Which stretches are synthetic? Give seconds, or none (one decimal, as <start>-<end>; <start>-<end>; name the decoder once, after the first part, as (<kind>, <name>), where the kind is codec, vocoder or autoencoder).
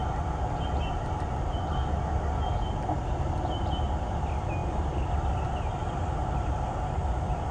none